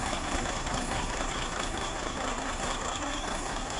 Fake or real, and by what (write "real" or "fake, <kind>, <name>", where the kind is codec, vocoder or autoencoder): fake, codec, SNAC